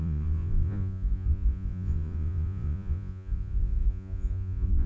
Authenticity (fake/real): fake